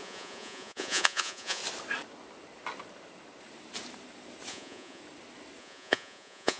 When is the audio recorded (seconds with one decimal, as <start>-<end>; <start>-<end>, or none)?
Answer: 1.6-4.5; 5.0-5.6